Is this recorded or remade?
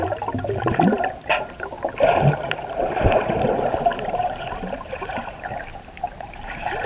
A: remade